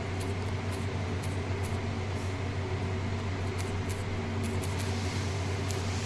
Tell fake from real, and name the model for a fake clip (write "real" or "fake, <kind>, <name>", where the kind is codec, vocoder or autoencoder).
real